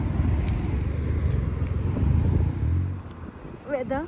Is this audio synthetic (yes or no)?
no